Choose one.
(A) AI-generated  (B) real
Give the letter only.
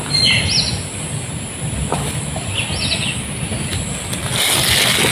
B